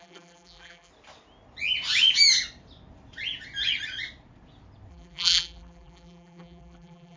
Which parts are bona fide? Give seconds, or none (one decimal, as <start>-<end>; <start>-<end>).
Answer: 0.9-4.9